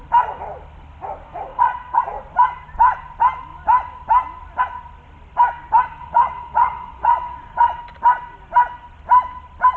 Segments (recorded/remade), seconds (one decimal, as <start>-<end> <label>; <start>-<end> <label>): 0.0-1.5 recorded; 1.5-2.0 remade; 2.0-6.0 recorded; 6.0-7.8 remade; 7.8-9.8 recorded